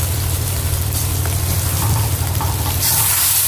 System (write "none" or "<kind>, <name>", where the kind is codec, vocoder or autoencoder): vocoder, BigVGAN v2